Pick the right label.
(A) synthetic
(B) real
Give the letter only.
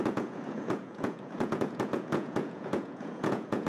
A